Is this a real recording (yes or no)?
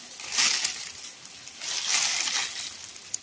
yes